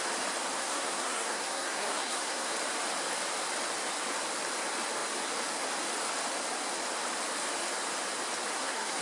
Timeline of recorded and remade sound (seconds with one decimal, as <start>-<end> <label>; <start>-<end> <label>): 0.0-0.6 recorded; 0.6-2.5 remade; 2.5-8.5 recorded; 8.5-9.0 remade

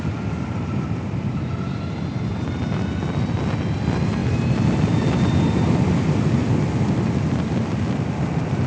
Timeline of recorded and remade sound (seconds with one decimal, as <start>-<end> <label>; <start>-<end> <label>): 0.0-8.7 recorded

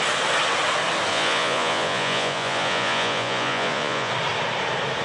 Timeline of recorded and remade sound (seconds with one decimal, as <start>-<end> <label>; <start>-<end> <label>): 0.0-1.1 recorded; 1.1-4.1 remade; 4.1-5.0 recorded

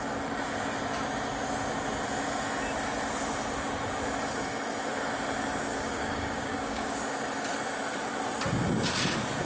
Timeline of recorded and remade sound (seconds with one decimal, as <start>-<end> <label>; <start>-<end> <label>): 0.0-5.7 recorded; 5.7-7.2 remade; 7.2-9.5 recorded

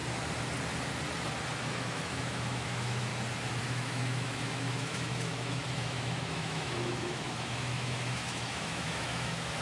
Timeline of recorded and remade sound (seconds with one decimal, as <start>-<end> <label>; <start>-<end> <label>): 0.0-1.7 recorded; 1.7-3.1 remade; 3.1-3.6 recorded; 3.6-9.6 remade